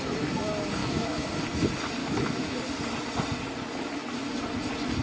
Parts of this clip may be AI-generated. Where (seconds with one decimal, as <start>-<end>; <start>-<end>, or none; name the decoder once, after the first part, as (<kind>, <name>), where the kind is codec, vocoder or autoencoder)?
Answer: 0.8-1.3 (autoencoder, DAC-VAE); 2.0-2.6